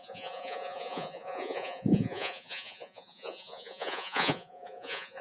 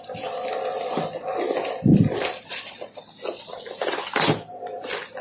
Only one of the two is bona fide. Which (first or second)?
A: second